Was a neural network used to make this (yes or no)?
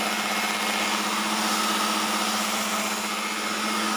no